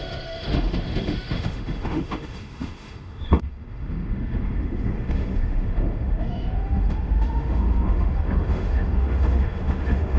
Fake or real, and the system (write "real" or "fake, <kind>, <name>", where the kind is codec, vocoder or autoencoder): fake, autoencoder, DAC-VAE